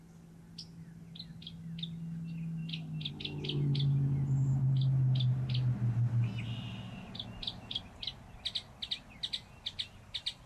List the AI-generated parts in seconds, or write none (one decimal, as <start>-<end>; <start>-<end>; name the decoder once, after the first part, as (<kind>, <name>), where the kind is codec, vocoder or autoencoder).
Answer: none